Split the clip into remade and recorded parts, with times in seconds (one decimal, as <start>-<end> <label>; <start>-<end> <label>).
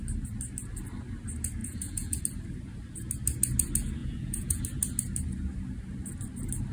0.0-1.6 recorded; 1.6-2.2 remade; 2.2-4.0 recorded; 4.0-4.6 remade; 4.6-6.7 recorded